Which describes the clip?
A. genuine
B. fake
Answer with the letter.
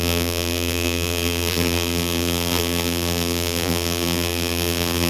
B